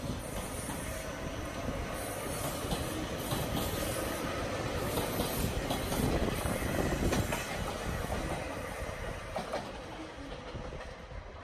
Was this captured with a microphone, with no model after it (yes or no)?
yes